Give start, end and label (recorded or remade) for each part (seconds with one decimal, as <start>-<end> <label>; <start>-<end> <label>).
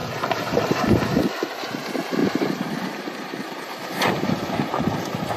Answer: 0.0-1.2 remade; 1.2-2.2 recorded; 2.2-5.4 remade